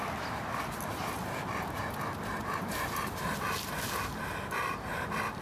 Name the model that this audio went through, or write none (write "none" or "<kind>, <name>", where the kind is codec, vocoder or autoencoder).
none